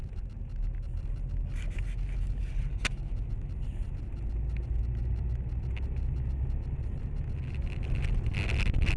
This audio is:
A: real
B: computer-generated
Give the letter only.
A